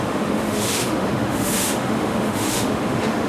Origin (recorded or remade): remade